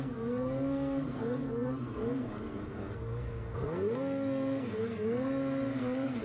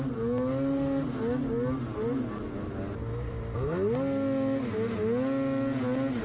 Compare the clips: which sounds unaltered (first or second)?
second